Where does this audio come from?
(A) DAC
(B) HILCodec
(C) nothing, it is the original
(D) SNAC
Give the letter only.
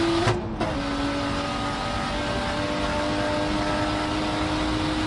C